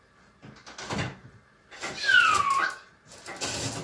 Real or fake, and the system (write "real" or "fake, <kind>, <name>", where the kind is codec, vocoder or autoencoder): real